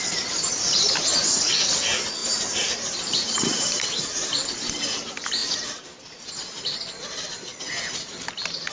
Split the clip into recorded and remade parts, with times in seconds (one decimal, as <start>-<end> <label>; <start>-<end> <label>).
0.0-2.2 recorded; 2.2-4.8 remade; 4.8-8.7 recorded